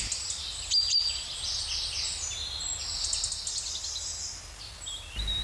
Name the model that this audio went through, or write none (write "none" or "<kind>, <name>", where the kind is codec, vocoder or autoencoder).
none